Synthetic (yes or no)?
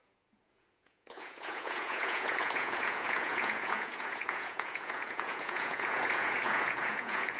yes